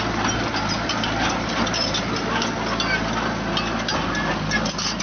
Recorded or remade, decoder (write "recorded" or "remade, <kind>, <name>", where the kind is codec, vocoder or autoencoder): recorded